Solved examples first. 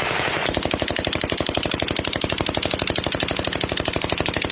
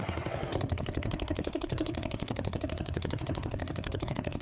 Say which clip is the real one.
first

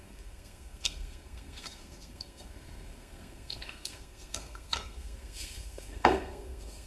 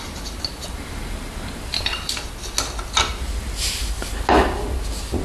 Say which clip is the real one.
second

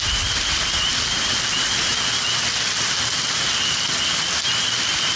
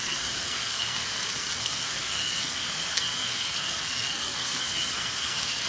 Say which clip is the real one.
first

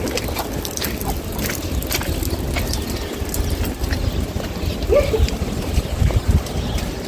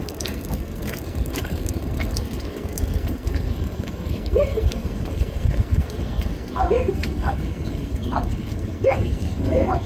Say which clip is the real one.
first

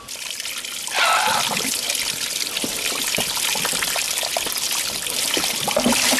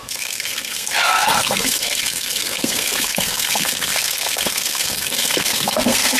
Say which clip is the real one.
first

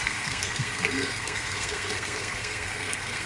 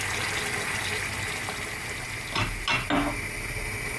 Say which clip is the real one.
second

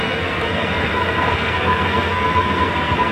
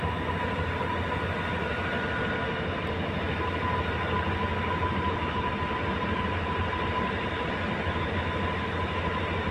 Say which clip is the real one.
second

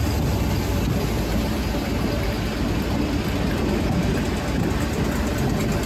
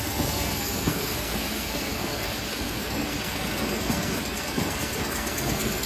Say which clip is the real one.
first